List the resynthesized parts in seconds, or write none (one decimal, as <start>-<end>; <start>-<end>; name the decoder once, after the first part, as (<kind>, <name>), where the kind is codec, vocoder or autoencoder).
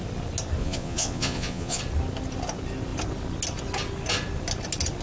0.6-1.8 (vocoder, Vocos)